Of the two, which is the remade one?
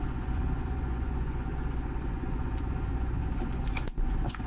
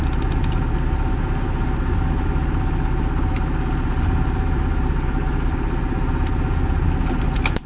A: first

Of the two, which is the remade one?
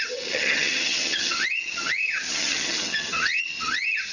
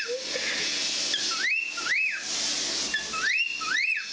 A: first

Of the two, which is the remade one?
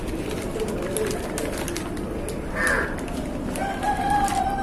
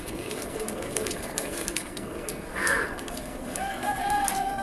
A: second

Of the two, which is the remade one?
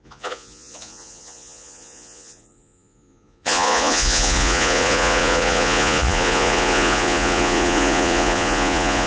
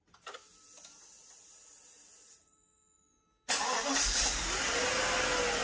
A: first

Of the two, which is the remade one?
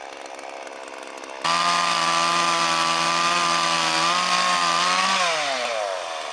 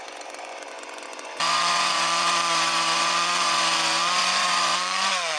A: second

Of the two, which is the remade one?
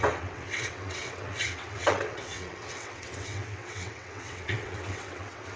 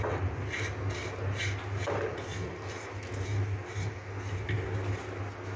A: first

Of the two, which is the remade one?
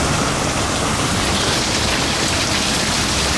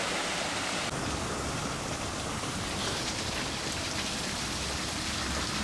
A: second